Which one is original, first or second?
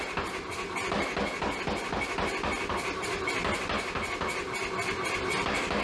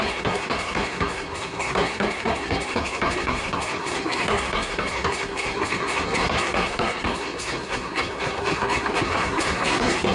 first